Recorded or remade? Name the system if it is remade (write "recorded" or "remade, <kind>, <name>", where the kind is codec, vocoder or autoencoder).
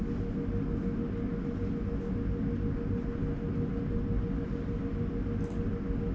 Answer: recorded